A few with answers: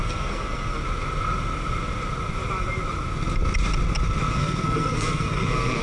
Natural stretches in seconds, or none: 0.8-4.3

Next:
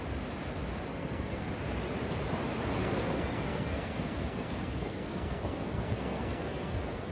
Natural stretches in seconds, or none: 0.0-0.9; 1.5-2.8

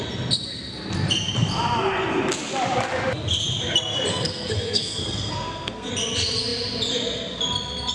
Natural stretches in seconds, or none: 0.0-4.1; 5.9-7.9

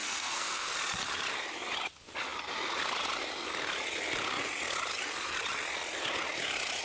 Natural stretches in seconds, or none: 0.7-6.8

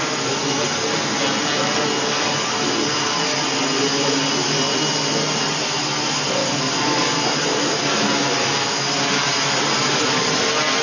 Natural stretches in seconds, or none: 0.0-10.8

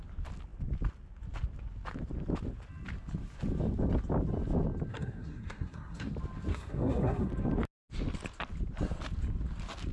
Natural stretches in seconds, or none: 0.0-4.9; 6.1-6.5; 7.3-9.9